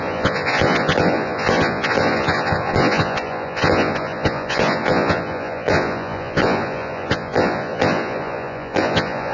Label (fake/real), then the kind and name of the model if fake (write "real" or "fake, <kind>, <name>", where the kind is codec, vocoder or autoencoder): fake, vocoder, Vocos